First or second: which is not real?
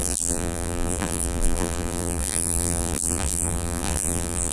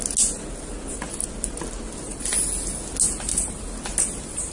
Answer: first